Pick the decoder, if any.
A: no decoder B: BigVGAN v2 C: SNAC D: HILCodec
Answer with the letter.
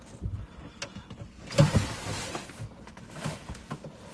A